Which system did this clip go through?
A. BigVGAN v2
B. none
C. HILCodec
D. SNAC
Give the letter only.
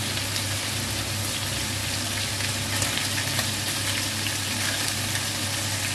B